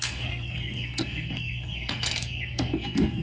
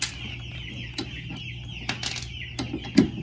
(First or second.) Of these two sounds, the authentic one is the second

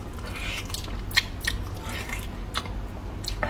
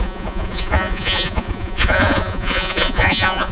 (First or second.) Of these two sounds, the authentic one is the first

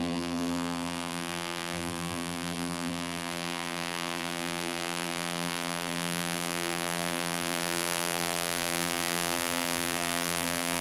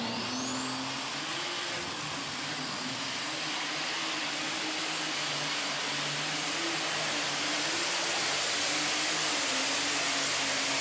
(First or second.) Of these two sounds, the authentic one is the second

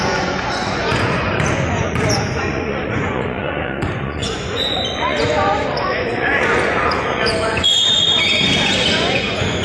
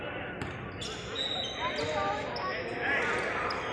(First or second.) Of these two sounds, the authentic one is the second